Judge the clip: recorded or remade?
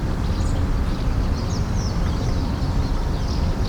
recorded